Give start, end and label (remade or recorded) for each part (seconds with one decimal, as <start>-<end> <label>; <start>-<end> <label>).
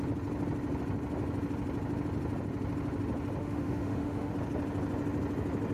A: 0.0-3.4 recorded; 3.4-4.3 remade; 4.3-5.7 recorded